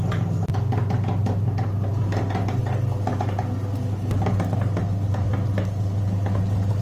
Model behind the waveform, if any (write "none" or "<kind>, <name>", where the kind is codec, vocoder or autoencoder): none